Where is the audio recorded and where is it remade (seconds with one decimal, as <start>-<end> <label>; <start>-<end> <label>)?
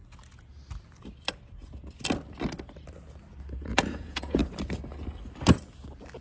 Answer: 0.0-3.4 recorded; 3.4-4.4 remade; 4.4-6.2 recorded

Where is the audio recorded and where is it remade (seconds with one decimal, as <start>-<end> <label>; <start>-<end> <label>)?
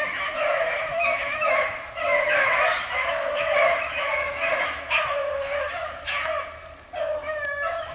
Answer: 0.0-6.3 remade; 6.3-7.0 recorded; 7.0-7.9 remade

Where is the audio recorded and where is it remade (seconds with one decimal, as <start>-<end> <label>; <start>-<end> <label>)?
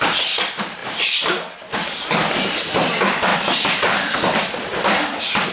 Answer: 0.0-0.8 recorded; 0.8-1.4 remade; 1.4-3.3 recorded; 3.3-5.5 remade